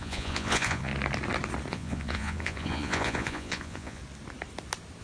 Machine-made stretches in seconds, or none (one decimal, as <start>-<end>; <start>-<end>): 0.0-0.9; 1.7-4.0